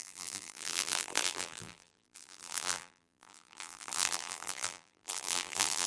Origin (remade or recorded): remade